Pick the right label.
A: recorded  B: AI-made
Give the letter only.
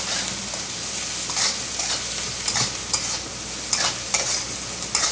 A